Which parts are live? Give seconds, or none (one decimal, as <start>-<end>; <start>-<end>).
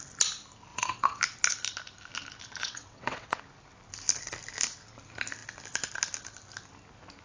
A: 0.0-0.7; 1.2-2.6; 3.4-7.2